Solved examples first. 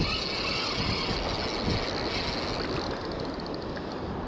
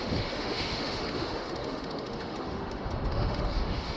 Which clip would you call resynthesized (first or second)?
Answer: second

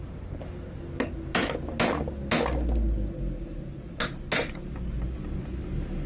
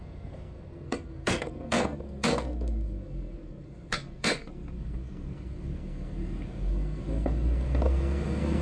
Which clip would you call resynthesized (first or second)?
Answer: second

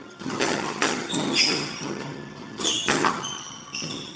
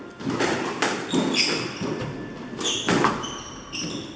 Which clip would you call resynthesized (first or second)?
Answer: first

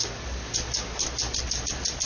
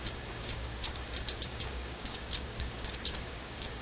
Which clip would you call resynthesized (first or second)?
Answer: second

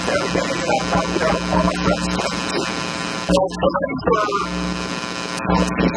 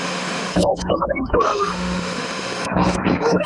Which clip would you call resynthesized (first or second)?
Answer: second